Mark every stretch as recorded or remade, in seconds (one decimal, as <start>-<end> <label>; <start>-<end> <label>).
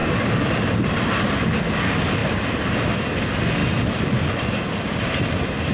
0.0-2.2 recorded; 2.2-2.9 remade; 2.9-3.6 recorded; 3.6-4.6 remade; 4.6-5.7 recorded